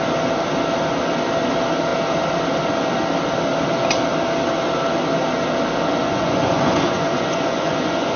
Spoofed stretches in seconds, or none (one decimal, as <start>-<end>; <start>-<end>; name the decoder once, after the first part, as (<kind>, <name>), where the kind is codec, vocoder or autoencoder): 5.9-8.2 (vocoder, Vocos)